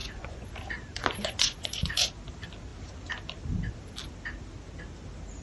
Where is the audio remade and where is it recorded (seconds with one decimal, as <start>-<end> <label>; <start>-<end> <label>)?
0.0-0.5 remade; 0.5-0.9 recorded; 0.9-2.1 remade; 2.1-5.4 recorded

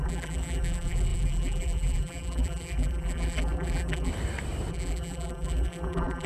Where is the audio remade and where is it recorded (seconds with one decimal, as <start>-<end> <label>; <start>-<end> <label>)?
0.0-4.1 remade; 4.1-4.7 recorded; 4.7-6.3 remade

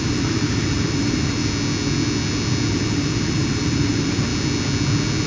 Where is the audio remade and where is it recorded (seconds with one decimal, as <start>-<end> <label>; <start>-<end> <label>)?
0.0-1.4 remade; 1.4-2.7 recorded; 2.7-4.3 remade; 4.3-5.3 recorded

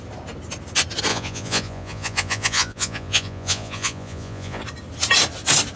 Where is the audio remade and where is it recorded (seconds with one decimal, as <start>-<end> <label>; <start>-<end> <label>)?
0.0-1.1 recorded; 1.1-4.6 remade; 4.6-5.8 recorded

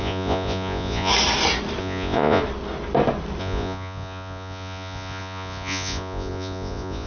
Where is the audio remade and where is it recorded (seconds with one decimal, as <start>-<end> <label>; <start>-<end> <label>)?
0.0-1.1 remade; 1.1-1.8 recorded; 1.8-2.4 remade; 2.4-3.4 recorded; 3.4-7.1 remade

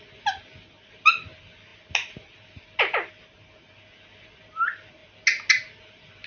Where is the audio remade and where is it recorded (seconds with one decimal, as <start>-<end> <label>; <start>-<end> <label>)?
0.0-6.3 recorded

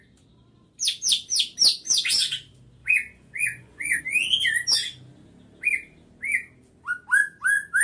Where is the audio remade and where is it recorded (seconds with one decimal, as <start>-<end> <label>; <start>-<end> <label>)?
0.0-2.8 recorded; 2.8-4.0 remade; 4.0-7.8 recorded

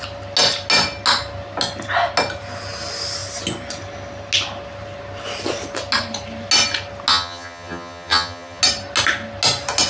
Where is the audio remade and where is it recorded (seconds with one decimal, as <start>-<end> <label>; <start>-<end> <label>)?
0.0-7.1 recorded; 7.1-8.6 remade; 8.6-9.9 recorded